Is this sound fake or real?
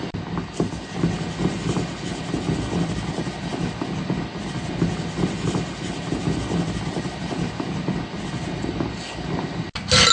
real